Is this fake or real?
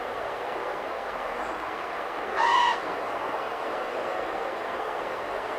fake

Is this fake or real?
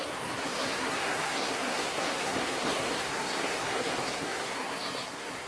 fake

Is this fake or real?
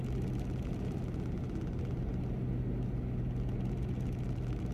real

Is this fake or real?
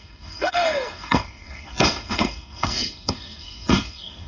fake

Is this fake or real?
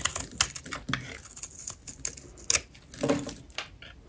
real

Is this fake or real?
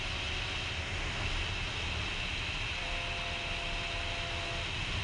real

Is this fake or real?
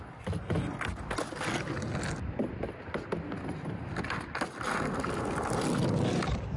real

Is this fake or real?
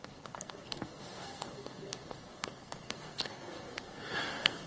fake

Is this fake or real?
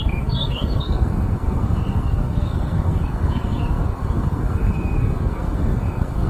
fake